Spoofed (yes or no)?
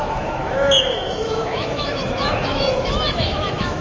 yes